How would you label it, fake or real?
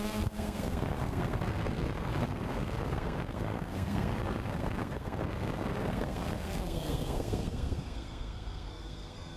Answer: fake